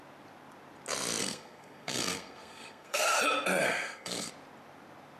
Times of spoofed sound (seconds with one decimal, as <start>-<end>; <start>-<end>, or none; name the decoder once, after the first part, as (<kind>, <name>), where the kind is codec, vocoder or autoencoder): 1.2-3.2 (codec, SNAC); 3.6-4.3